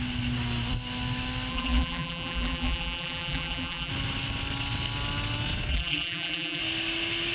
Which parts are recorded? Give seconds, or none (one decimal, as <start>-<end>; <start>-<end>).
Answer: 0.0-1.5; 3.9-5.7; 6.6-7.3